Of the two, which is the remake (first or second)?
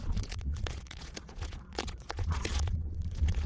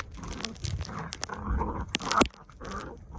first